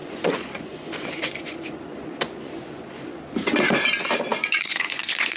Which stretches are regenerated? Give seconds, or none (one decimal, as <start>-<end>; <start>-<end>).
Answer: 0.0-3.2; 4.3-5.4